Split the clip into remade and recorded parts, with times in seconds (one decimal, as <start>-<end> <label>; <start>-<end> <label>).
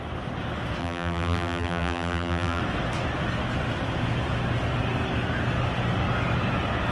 0.0-0.8 recorded; 0.8-2.6 remade; 2.6-6.9 recorded